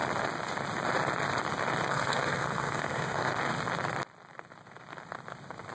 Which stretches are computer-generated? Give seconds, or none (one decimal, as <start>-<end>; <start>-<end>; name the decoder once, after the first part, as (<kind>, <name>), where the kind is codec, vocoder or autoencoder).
1.9-3.3 (codec, SNAC)